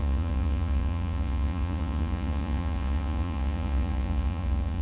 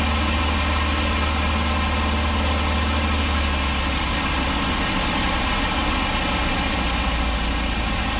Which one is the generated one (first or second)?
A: first